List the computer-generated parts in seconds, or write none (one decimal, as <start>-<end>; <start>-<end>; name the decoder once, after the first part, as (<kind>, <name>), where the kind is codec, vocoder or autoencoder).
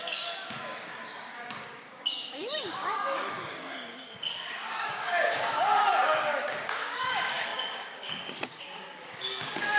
0.0-9.8 (codec, DAC)